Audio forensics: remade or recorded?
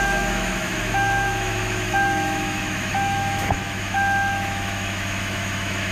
remade